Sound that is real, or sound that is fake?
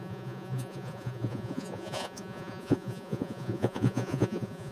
fake